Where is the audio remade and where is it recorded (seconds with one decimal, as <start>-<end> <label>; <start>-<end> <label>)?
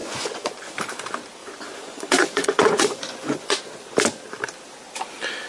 0.0-0.7 remade; 0.7-1.4 recorded; 1.4-3.6 remade; 3.6-5.5 recorded